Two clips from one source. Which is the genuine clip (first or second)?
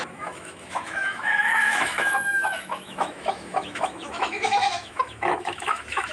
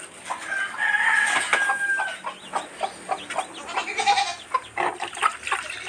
second